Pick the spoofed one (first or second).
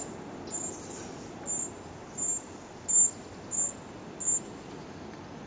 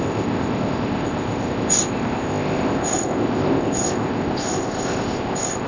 second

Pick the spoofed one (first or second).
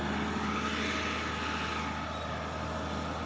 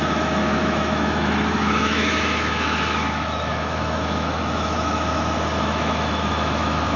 second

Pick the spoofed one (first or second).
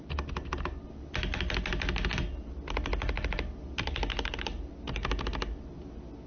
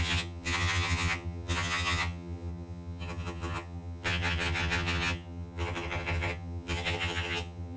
second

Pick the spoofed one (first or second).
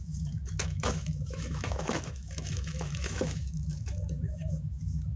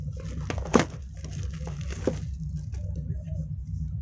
first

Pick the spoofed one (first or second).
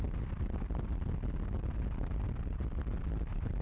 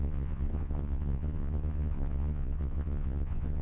second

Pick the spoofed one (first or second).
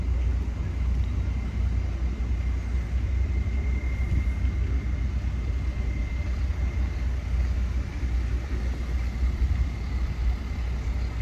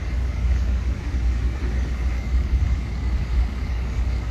second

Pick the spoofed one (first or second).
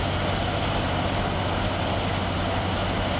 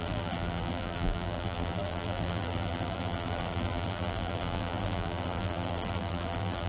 second